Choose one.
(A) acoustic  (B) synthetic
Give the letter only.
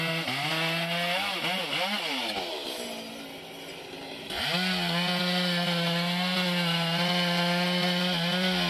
A